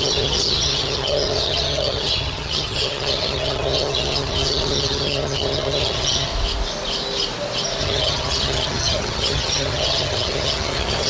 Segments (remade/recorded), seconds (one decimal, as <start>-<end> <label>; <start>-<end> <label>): 0.0-6.3 remade; 6.3-7.8 recorded; 7.8-11.1 remade